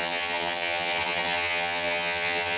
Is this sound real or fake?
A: fake